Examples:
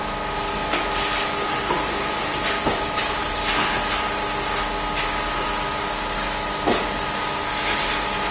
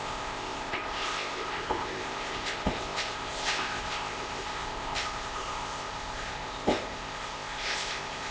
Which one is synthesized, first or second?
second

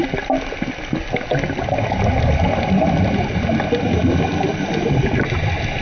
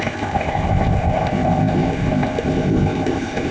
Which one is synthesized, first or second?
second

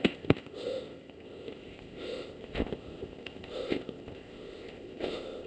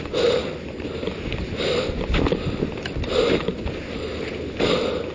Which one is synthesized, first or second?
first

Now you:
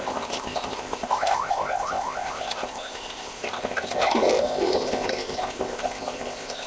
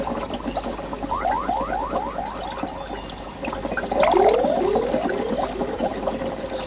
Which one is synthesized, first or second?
first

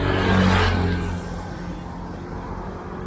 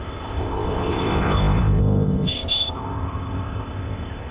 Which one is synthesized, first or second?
second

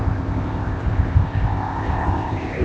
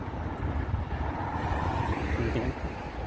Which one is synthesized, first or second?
first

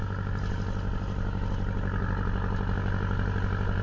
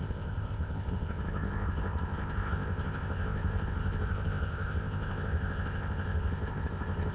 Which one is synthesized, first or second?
second